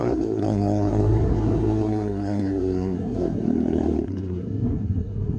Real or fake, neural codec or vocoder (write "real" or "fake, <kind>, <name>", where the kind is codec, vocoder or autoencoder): fake, codec, SNAC